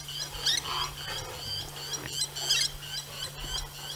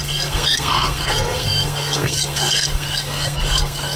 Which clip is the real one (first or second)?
first